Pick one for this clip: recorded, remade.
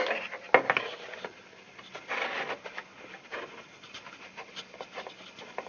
recorded